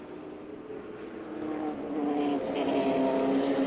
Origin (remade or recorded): recorded